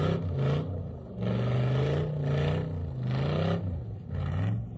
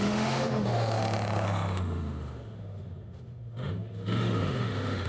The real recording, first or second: first